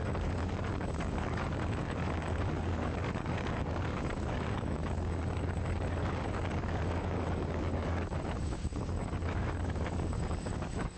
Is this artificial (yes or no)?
yes